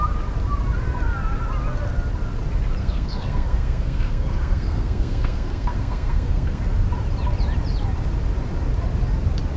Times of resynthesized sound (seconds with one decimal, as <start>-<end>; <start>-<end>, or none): 2.8-6.6

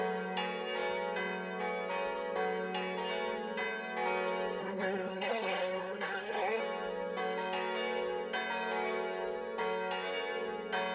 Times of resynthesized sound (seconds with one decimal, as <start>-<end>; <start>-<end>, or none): 4.6-6.6